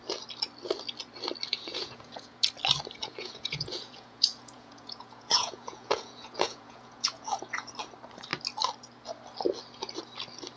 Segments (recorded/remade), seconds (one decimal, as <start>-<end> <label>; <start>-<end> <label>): 0.0-1.5 recorded; 1.5-2.4 remade; 2.4-3.0 recorded; 3.0-7.7 remade; 7.7-10.6 recorded

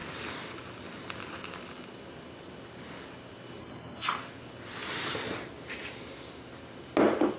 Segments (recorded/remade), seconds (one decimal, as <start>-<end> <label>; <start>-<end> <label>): 0.0-3.6 recorded; 3.6-4.2 remade; 4.2-7.4 recorded

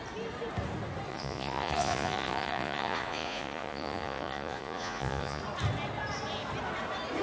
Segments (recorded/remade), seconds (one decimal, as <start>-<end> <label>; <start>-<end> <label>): 0.0-1.1 recorded; 1.1-5.4 remade; 5.4-7.2 recorded

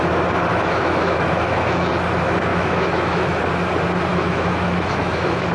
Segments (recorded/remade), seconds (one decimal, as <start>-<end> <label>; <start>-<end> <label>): 0.0-0.5 recorded; 0.5-1.9 remade; 1.9-2.5 recorded; 2.5-3.4 remade; 3.4-4.1 recorded; 4.1-5.5 remade

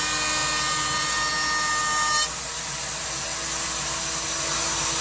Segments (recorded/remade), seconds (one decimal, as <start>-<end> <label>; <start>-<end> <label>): 0.0-5.0 recorded

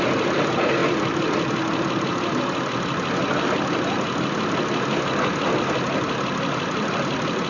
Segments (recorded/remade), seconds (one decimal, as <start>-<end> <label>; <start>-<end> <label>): 0.0-7.5 recorded

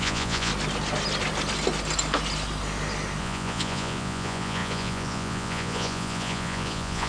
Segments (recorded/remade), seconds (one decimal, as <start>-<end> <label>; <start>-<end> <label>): 0.0-0.5 remade; 0.5-3.2 recorded; 3.2-7.1 remade